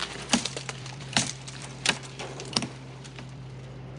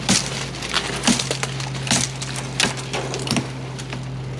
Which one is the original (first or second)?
second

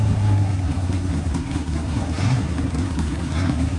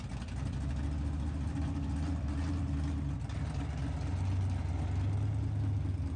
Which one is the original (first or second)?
second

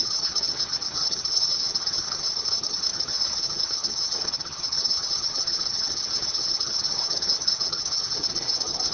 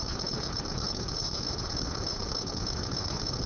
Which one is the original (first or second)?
second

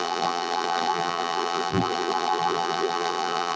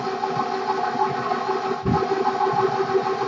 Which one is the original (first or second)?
second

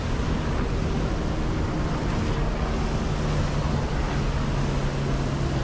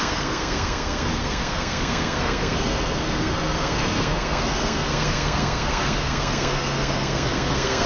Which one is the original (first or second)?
first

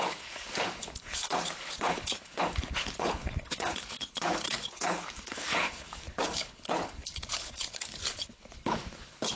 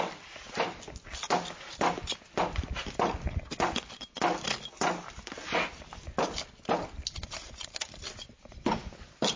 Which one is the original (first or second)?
second